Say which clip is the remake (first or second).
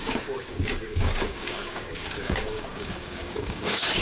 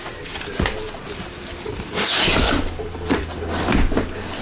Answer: first